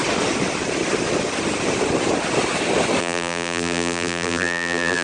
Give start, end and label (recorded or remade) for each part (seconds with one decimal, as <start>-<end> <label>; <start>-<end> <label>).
0.0-3.0 recorded; 3.0-5.0 remade